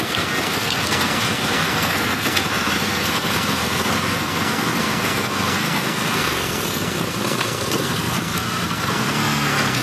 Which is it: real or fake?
fake